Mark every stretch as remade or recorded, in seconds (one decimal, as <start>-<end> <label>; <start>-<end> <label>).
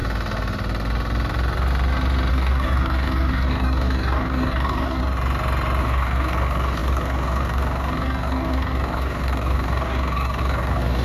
0.0-2.3 recorded; 2.3-5.0 remade; 5.0-5.8 recorded; 5.8-11.0 remade